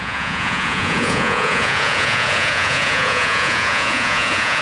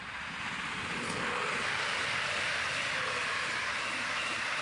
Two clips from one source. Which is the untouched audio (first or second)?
second